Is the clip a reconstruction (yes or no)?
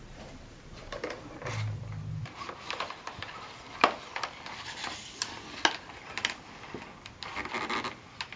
no